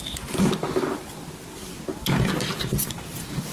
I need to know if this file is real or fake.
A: real